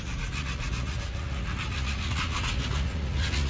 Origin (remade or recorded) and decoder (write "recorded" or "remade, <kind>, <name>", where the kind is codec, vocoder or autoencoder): remade, vocoder, Vocos